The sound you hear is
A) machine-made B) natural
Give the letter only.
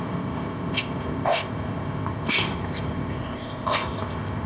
A